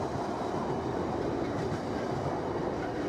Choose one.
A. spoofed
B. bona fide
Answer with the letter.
B